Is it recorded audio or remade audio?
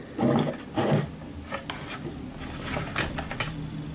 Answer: recorded